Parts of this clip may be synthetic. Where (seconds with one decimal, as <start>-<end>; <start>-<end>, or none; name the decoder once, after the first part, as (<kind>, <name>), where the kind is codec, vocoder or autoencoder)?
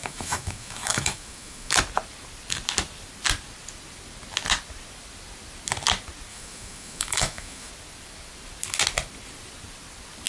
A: 0.0-1.7 (autoencoder, DAC-VAE); 6.3-7.7